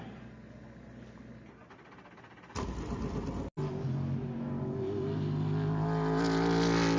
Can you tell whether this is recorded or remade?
recorded